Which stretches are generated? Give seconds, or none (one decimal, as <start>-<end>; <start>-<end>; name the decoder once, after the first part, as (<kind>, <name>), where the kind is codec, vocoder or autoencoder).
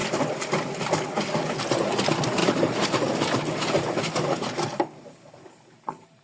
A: 2.4-6.2 (vocoder, BigVGAN v2)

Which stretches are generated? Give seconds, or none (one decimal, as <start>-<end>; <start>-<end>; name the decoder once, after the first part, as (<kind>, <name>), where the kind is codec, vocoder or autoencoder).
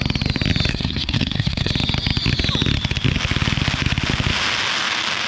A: 0.7-1.7 (codec, SNAC)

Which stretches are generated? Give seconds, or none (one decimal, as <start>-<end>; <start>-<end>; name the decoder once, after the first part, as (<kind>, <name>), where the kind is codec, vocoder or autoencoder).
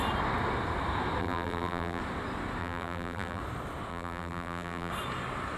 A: 1.2-2.0 (vocoder, BigVGAN v2); 2.6-3.4; 3.9-4.9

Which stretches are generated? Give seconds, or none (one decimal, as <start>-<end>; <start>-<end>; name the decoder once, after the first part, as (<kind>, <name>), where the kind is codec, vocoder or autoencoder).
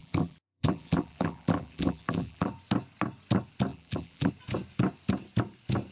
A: 0.0-2.5 (vocoder, BigVGAN v2); 3.7-4.3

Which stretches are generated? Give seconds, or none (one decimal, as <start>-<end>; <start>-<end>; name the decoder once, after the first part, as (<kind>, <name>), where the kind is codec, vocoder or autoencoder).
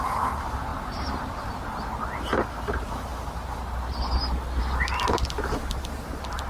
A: 0.7-1.5 (vocoder, BigVGAN v2)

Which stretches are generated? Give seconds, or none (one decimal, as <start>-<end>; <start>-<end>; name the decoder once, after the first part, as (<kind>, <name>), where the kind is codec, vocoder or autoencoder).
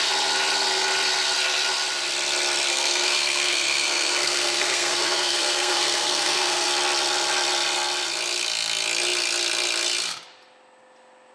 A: 2.7-6.7 (codec, SNAC)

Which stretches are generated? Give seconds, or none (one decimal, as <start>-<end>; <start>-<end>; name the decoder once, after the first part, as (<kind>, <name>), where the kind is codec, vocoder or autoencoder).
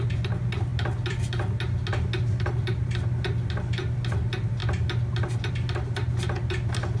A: none